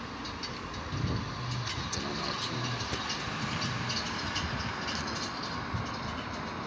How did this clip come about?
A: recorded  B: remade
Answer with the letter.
A